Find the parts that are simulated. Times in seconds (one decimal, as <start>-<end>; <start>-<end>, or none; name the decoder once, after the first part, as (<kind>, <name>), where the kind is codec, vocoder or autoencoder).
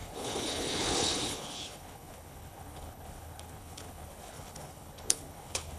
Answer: 0.0-5.8 (codec, HILCodec)